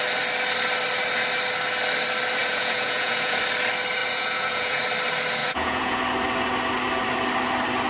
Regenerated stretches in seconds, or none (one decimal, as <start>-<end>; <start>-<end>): 2.4-3.4; 4.0-4.8; 5.4-6.0